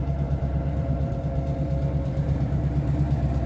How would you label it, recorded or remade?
remade